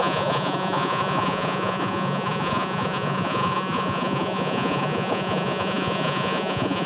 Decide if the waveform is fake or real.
fake